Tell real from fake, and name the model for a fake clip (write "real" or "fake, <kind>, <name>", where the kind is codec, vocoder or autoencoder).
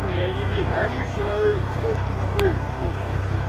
fake, codec, DAC